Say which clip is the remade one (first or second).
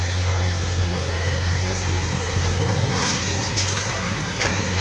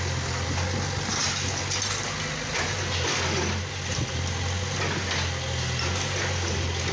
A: first